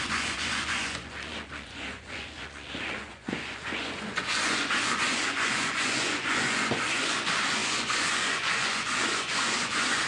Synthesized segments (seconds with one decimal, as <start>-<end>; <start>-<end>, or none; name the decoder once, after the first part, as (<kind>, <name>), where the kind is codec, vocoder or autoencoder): 0.0-10.1 (vocoder, Vocos)